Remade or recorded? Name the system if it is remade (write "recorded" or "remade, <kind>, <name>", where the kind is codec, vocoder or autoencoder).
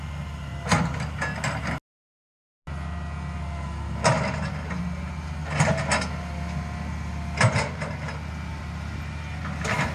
recorded